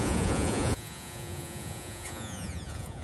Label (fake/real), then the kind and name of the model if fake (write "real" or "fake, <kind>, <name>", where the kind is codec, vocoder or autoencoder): fake, vocoder, Vocos